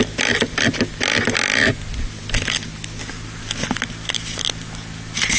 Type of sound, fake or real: real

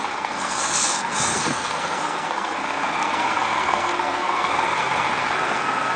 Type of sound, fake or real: fake